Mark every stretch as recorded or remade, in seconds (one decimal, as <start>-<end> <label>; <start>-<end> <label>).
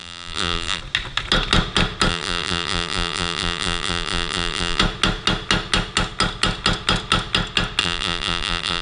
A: 0.0-0.8 remade; 0.8-2.1 recorded; 2.1-4.8 remade; 4.8-7.8 recorded; 7.8-8.8 remade